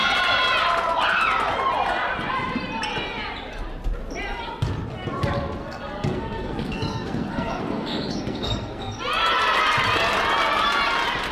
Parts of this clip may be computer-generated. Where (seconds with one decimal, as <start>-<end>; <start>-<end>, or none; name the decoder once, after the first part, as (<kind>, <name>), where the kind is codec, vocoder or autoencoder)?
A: 5.6-9.0 (codec, SNAC)